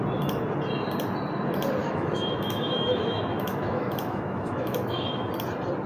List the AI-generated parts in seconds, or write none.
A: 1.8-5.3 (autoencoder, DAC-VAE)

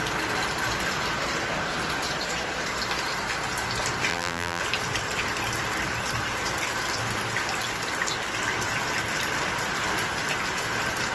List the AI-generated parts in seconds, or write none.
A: 4.1-4.6 (vocoder, BigVGAN v2)

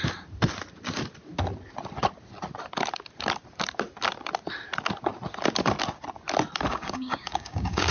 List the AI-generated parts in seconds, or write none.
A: 6.7-7.9 (codec, DAC)

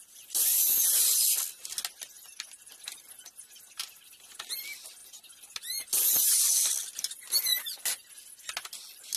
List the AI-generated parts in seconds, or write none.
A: none

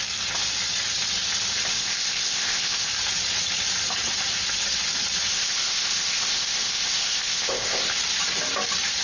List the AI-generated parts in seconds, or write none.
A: 1.7-2.9 (codec, ZipCodec); 5.3-8.0